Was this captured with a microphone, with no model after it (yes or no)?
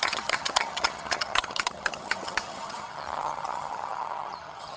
no